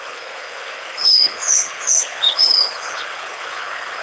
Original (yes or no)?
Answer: no